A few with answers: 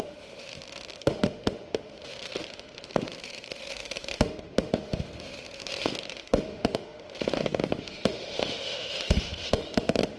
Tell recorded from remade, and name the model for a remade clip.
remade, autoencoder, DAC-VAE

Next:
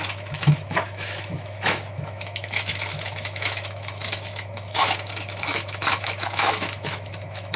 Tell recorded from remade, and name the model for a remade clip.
remade, autoencoder, DAC-VAE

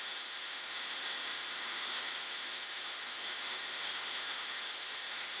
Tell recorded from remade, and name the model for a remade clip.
remade, autoencoder, DAC-VAE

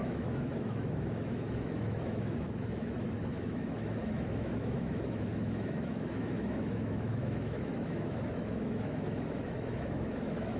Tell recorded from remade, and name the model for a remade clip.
remade, autoencoder, DAC-VAE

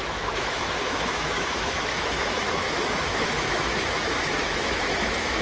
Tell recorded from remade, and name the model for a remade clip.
remade, autoencoder, DAC-VAE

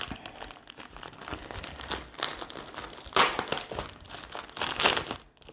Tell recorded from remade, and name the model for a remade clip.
recorded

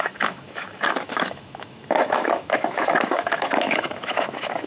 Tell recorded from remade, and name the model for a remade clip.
remade, autoencoder, DAC-VAE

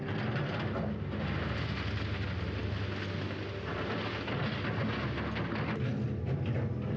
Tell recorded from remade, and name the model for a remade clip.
recorded